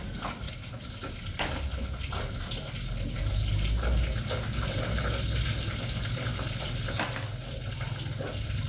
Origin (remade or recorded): recorded